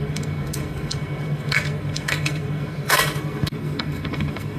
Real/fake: fake